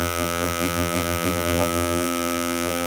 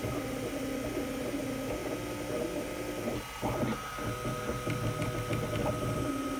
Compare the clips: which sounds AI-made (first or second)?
first